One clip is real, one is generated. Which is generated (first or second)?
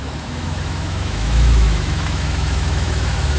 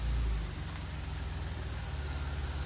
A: first